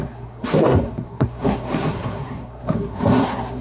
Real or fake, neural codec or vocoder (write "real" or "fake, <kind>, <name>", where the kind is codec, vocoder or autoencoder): fake, codec, SNAC